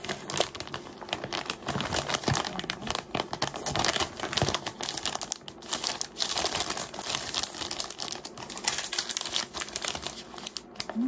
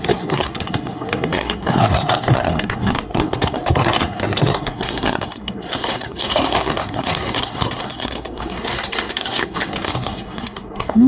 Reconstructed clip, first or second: second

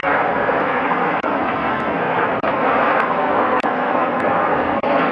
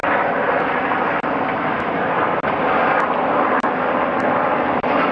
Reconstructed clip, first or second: first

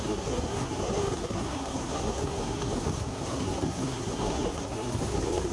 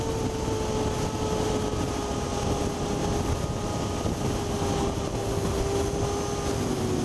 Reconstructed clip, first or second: first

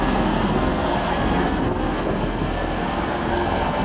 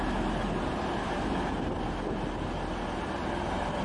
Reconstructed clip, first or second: first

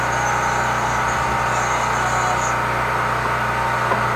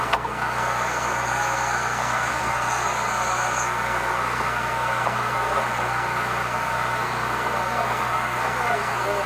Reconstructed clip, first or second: second